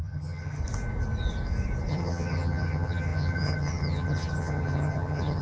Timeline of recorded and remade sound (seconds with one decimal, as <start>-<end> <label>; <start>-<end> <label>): 0.0-0.6 remade; 0.6-1.9 recorded; 1.9-5.4 remade

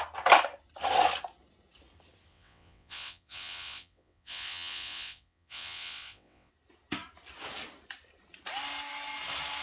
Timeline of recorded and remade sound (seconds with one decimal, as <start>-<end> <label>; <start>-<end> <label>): 0.0-2.3 recorded; 2.3-6.5 remade; 6.5-9.6 recorded

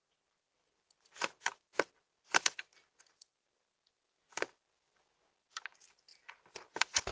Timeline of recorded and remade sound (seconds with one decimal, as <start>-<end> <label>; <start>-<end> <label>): 0.0-7.1 recorded

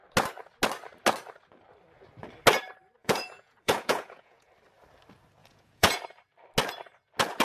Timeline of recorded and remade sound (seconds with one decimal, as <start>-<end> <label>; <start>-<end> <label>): 0.0-3.0 recorded; 3.0-4.5 remade; 4.5-5.4 recorded; 5.4-6.0 remade; 6.0-7.4 recorded